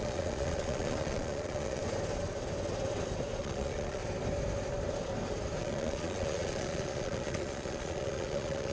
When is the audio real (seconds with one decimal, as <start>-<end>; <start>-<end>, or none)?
1.8-3.4; 4.0-5.6